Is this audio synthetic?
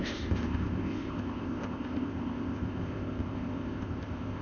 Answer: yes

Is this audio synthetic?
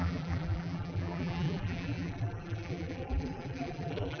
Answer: yes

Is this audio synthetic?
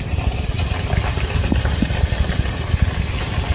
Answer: no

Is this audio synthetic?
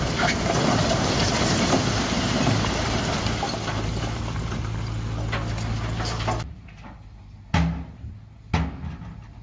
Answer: no